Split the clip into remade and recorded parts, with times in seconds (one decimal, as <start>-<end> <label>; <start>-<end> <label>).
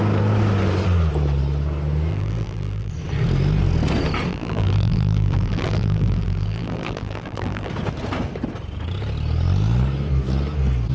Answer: 0.0-2.1 recorded; 2.1-2.9 remade; 2.9-4.3 recorded; 4.3-7.7 remade; 7.7-10.9 recorded